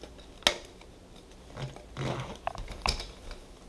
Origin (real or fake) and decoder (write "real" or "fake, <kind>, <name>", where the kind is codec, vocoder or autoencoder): real